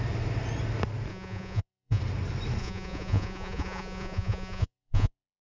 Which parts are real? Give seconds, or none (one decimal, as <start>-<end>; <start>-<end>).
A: 0.0-1.1; 2.0-2.6

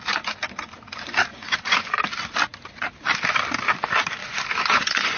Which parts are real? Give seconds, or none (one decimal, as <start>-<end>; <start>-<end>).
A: 0.0-1.3; 1.9-4.2

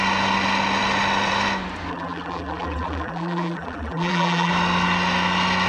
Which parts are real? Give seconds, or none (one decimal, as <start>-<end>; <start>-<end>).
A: 0.0-1.9; 4.5-5.7

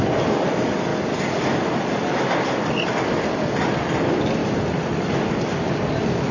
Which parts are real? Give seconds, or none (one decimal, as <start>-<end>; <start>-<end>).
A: 0.0-6.3

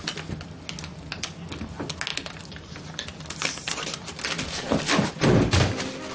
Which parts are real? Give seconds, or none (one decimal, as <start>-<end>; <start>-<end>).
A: 0.0-2.1; 5.2-6.1

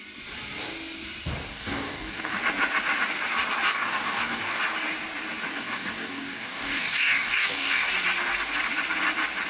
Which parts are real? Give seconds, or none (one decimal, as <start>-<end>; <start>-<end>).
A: 0.0-1.5; 2.4-3.7; 4.6-5.5; 7.9-9.5

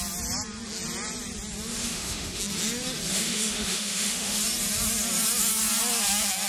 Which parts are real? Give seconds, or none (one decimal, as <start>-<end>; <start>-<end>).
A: 0.0-1.8; 2.4-3.1; 4.4-6.5

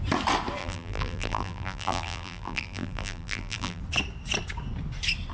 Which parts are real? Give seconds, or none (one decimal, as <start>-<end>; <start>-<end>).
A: 0.0-0.6; 3.8-5.3